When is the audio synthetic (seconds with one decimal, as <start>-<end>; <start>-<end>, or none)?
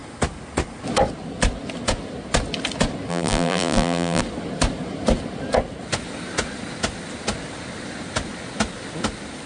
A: 3.1-4.2